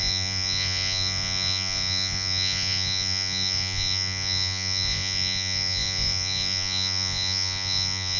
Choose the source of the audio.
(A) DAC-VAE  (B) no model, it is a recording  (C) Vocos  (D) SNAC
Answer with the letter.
C